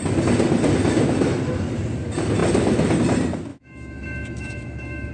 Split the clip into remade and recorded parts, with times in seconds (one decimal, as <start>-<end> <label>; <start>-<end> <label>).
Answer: 0.0-3.5 recorded; 3.5-5.1 remade